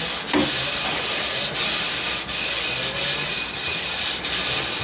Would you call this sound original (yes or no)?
yes